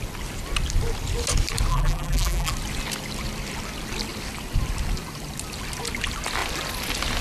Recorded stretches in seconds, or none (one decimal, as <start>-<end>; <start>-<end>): 0.0-1.7; 2.5-7.2